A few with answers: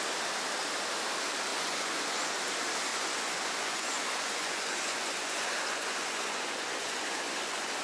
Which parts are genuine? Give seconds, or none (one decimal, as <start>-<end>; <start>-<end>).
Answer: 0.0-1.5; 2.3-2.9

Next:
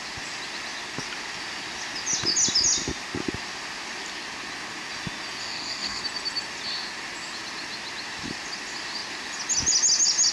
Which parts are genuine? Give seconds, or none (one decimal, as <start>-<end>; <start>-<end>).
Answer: 0.0-5.4; 6.0-10.3

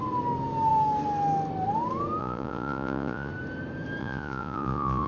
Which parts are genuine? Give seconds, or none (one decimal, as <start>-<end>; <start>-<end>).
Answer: 0.0-2.2; 3.3-4.0